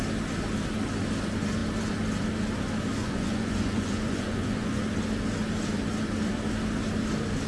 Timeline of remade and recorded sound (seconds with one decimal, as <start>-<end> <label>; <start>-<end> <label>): 0.0-3.0 recorded; 3.0-4.8 remade; 4.8-7.5 recorded